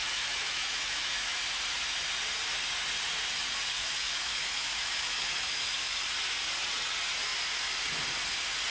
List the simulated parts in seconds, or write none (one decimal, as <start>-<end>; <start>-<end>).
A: 0.0-1.4; 3.8-6.0